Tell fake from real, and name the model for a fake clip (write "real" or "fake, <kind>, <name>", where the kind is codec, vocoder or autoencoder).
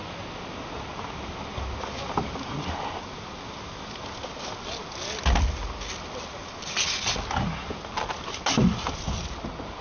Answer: real